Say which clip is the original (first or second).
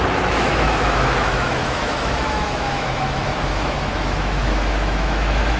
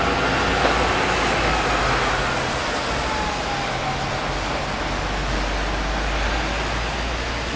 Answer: second